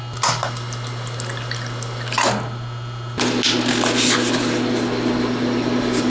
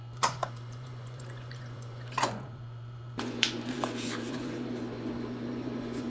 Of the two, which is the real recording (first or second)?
first